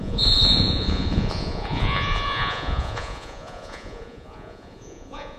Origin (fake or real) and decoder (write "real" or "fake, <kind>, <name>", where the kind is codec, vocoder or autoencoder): fake, vocoder, Vocos